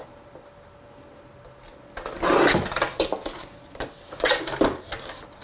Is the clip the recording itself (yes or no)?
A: yes